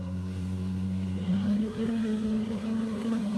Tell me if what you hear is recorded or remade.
remade